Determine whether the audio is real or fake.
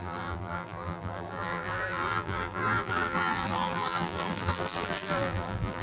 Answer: fake